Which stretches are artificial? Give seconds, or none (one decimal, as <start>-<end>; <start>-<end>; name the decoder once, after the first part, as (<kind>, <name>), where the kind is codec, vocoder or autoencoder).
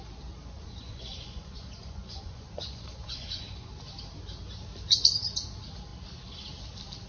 0.4-3.7 (vocoder, Vocos)